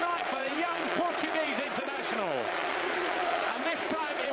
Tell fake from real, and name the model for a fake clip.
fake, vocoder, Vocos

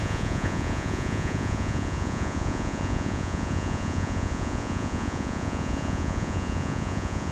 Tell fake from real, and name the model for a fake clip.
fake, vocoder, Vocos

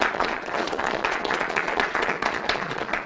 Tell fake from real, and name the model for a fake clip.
fake, vocoder, Vocos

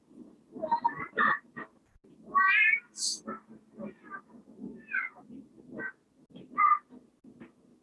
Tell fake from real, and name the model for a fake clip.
real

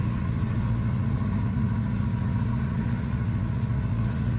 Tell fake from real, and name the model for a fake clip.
fake, vocoder, Vocos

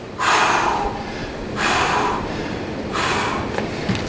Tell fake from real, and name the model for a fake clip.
real